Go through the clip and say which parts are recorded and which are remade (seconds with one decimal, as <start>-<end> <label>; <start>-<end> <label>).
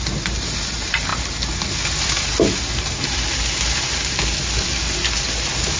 0.0-5.8 recorded